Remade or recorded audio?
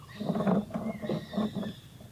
recorded